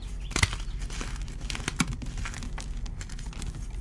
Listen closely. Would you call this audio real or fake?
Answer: real